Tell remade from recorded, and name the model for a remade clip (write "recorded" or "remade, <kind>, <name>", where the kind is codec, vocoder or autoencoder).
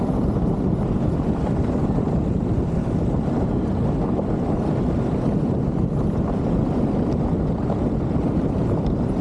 recorded